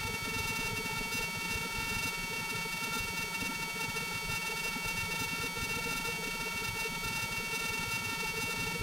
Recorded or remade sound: remade